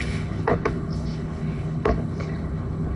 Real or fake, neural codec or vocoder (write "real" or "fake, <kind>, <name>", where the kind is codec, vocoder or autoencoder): fake, codec, HILCodec